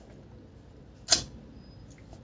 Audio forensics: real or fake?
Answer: real